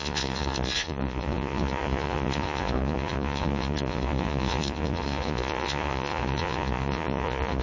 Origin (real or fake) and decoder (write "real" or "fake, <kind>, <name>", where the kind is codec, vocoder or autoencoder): fake, vocoder, Vocos